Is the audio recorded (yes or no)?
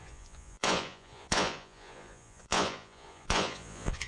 no